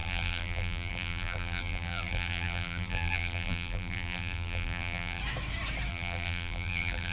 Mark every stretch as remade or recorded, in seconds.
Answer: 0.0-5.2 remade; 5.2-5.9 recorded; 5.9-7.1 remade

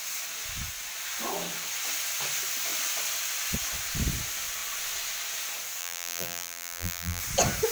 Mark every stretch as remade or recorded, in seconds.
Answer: 0.0-5.8 recorded; 5.8-7.2 remade; 7.2-7.7 recorded

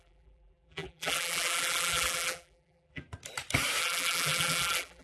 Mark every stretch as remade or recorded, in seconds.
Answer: 0.0-3.0 remade; 3.0-3.8 recorded; 3.8-5.0 remade

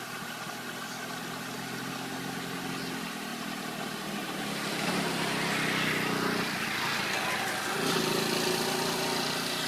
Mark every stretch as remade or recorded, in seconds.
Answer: 0.0-9.7 recorded

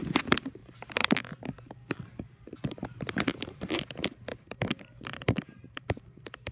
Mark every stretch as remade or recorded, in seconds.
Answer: 0.0-0.6 recorded; 0.6-3.9 remade; 3.9-4.3 recorded; 4.3-6.0 remade; 6.0-6.5 recorded

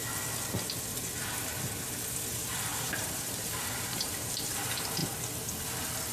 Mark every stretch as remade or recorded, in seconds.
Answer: 0.0-2.7 recorded; 2.7-4.5 remade; 4.5-6.1 recorded

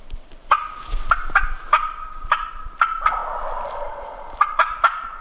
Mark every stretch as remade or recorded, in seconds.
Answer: 0.0-0.6 remade; 0.6-1.4 recorded; 1.4-3.2 remade; 3.2-3.9 recorded; 3.9-5.2 remade

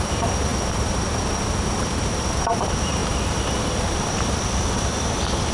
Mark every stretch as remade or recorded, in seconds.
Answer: 0.0-5.5 remade